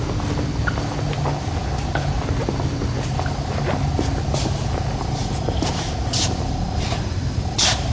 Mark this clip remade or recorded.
recorded